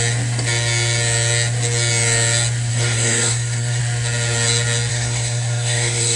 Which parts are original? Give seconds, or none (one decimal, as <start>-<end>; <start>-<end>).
0.0-2.7; 3.8-4.9